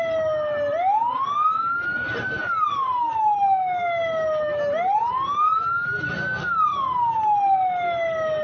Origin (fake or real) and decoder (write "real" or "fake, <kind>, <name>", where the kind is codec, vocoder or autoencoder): real